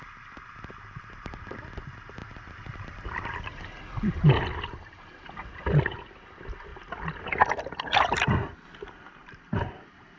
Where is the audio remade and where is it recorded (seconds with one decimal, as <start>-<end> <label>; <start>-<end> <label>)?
0.0-10.2 recorded